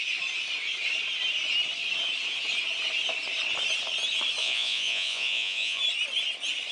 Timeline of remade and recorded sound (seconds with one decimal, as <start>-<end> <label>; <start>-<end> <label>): 0.0-4.4 recorded; 4.4-5.8 remade; 5.8-6.7 recorded